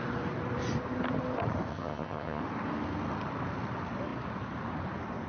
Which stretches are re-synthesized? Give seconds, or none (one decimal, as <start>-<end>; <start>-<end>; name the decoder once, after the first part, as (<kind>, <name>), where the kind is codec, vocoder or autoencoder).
1.7-2.4 (vocoder, HiFi-GAN)